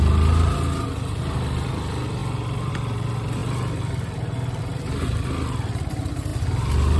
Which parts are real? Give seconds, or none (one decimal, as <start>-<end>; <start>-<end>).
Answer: 0.0-7.0